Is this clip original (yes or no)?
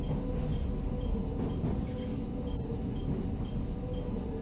yes